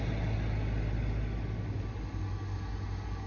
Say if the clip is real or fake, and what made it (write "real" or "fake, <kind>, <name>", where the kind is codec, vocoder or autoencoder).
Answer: real